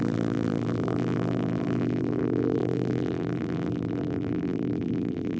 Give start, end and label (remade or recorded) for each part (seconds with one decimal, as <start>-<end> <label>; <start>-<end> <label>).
0.0-5.4 remade